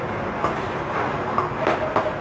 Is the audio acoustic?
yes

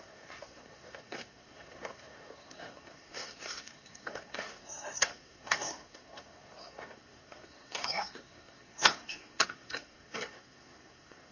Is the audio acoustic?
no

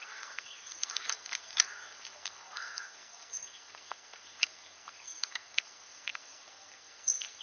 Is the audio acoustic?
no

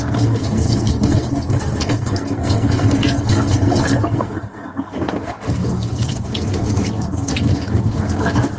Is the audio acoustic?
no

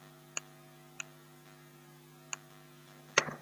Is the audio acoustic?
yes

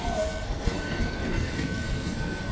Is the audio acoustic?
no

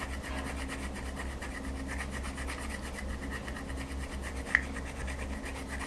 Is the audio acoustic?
yes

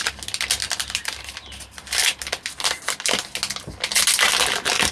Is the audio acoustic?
yes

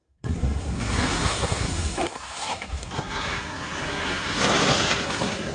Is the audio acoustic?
no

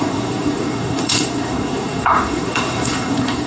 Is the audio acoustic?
no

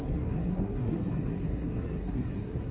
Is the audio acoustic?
no